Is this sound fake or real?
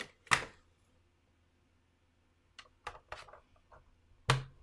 real